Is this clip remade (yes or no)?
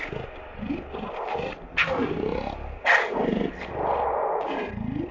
no